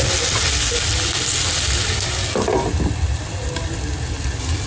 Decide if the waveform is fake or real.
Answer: real